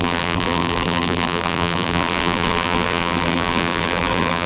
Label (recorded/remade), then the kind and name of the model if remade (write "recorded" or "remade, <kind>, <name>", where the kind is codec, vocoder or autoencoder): remade, vocoder, BigVGAN v2